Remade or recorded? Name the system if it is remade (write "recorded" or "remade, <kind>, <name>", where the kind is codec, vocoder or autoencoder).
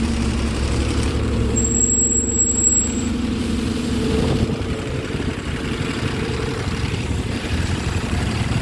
remade, vocoder, BigVGAN v2